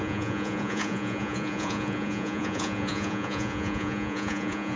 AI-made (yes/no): yes